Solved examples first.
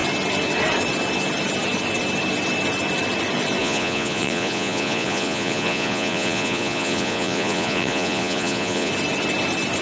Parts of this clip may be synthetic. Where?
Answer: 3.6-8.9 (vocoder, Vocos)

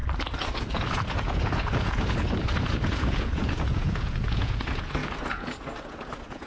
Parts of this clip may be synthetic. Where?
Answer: 0.6-6.5 (vocoder, Vocos)

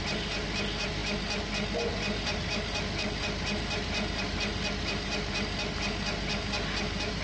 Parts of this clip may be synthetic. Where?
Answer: none

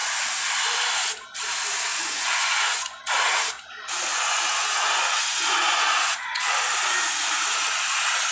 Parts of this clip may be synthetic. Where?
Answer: 1.9-3.0 (vocoder, Vocos); 4.1-6.5

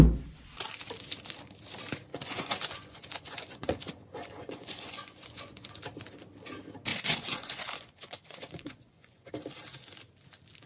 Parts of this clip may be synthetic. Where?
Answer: 2.1-5.7 (vocoder, Vocos); 6.9-9.3

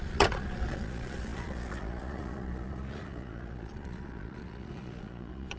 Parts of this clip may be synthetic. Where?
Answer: 0.0-5.6 (vocoder, Vocos)

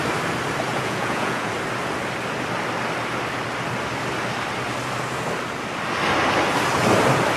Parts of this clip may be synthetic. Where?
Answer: 0.7-1.5 (vocoder, Vocos)